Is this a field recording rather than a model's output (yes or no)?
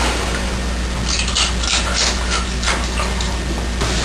yes